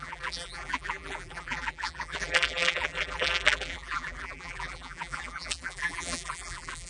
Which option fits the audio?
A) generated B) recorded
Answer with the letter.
A